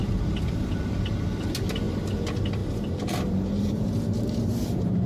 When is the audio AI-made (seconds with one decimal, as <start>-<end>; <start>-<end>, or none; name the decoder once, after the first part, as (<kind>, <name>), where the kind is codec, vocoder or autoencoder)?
2.6-5.1 (vocoder, BigVGAN v2)